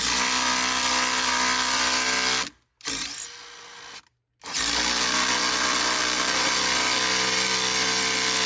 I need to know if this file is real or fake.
real